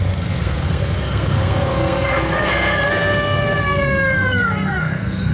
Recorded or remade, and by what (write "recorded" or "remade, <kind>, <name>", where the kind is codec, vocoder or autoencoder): remade, codec, SNAC